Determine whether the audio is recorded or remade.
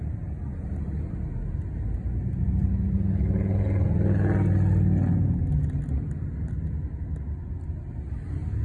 recorded